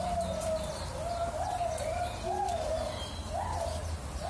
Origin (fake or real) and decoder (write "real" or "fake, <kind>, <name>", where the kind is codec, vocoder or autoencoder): real